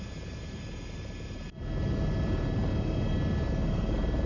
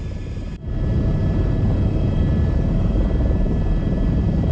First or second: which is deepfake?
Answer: second